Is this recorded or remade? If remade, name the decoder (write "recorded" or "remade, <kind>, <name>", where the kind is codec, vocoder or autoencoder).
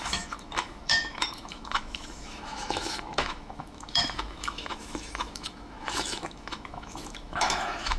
remade, autoencoder, DAC-VAE